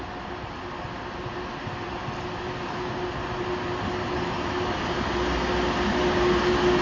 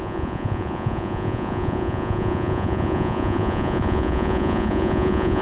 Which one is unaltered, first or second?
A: first